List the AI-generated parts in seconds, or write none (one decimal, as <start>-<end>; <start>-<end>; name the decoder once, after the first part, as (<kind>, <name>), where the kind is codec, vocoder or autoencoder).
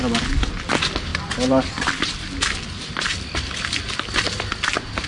none